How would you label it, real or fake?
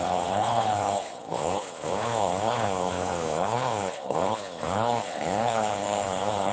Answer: fake